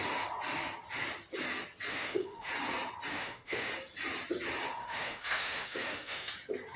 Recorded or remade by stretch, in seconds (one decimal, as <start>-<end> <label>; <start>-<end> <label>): 0.0-1.9 recorded; 1.9-2.5 remade; 2.5-3.1 recorded; 3.1-3.7 remade; 3.7-4.8 recorded; 4.8-6.3 remade; 6.3-6.8 recorded